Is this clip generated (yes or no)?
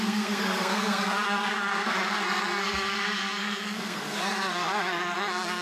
yes